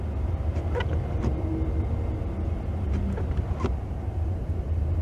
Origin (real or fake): real